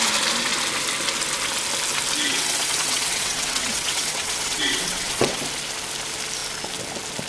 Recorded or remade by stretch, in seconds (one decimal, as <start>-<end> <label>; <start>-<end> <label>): 0.0-2.3 recorded; 2.3-5.4 remade; 5.4-7.3 recorded